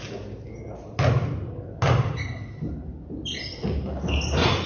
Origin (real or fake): real